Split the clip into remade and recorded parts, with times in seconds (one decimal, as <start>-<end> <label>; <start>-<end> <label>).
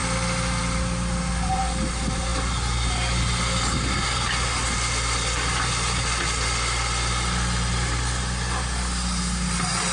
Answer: 0.0-9.9 recorded